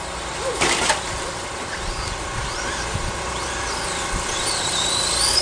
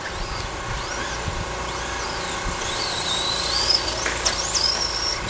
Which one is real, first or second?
second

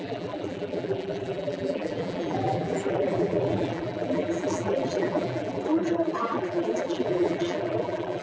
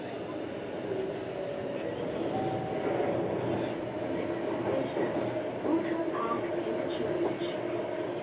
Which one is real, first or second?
second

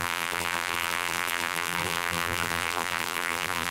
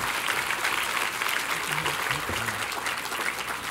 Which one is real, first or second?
second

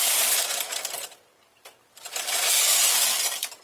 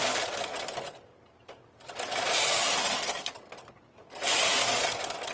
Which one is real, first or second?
second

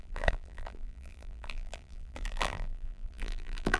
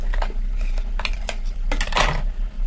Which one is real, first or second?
second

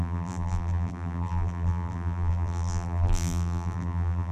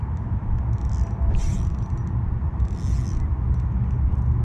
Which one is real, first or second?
second